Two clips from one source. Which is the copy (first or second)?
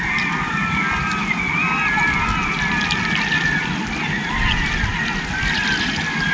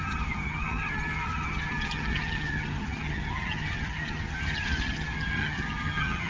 second